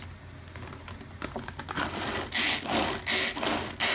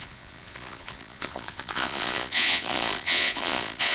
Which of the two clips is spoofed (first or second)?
second